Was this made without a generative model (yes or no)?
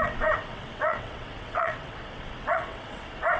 no